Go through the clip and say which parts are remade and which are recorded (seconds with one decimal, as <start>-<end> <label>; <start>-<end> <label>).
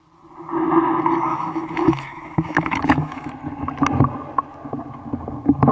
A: 0.0-1.3 recorded; 1.3-3.3 remade; 3.3-5.7 recorded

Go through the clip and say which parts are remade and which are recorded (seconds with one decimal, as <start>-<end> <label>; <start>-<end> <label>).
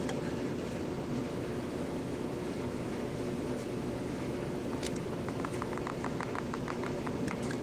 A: 0.0-1.3 recorded; 1.3-5.8 remade; 5.8-7.6 recorded